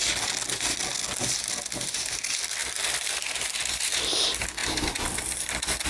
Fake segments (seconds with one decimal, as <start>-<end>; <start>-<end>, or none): 2.6-3.5; 4.6-5.9